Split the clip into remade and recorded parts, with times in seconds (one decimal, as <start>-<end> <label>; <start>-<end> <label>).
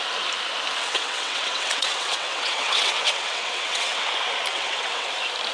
0.0-0.8 recorded; 0.8-4.1 remade; 4.1-4.5 recorded; 4.5-5.1 remade; 5.1-5.5 recorded